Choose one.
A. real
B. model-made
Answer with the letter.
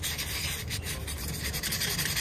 B